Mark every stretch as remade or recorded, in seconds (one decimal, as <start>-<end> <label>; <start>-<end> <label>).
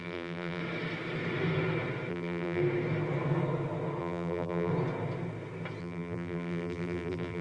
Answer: 0.0-0.6 remade; 0.6-2.1 recorded; 2.1-2.6 remade; 2.6-4.0 recorded; 4.0-4.7 remade; 4.7-5.8 recorded; 5.8-7.4 remade